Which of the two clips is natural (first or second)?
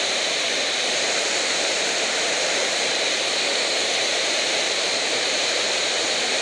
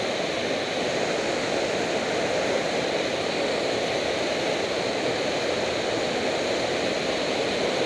second